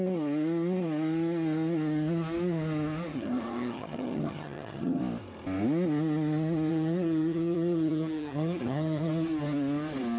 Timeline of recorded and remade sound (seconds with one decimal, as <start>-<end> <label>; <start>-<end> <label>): 0.0-3.1 recorded; 3.1-5.0 remade; 5.0-6.7 recorded; 6.7-9.1 remade; 9.1-10.2 recorded